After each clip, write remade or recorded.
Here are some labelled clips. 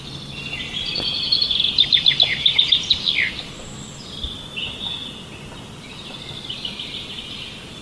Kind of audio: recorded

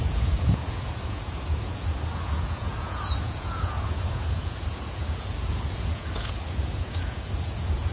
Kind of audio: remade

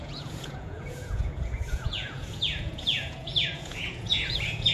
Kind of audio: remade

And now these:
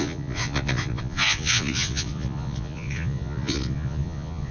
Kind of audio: remade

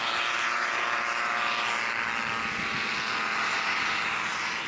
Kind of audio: recorded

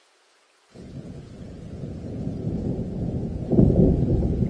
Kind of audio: remade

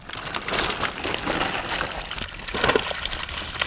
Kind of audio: recorded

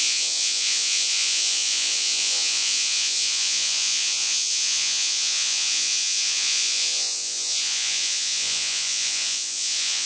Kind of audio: remade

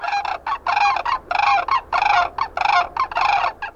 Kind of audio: recorded